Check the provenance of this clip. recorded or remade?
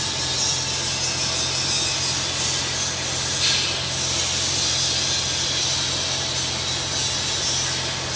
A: recorded